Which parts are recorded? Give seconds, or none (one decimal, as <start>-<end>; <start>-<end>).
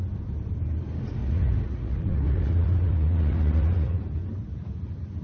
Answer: 0.0-1.2; 4.0-5.2